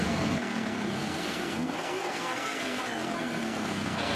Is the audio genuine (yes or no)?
no